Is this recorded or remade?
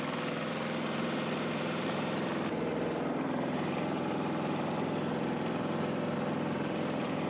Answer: remade